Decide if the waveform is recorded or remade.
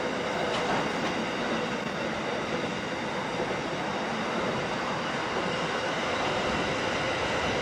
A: recorded